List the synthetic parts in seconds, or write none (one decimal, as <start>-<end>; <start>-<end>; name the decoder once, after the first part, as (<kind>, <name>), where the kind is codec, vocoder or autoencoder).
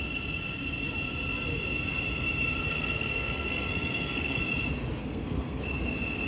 2.6-4.4 (codec, SNAC); 5.0-5.6